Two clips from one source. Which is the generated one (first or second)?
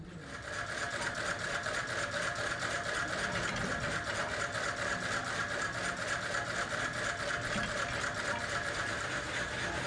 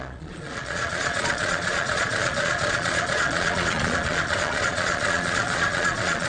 second